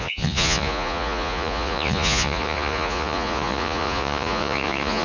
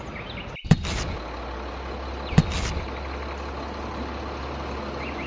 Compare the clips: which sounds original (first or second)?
second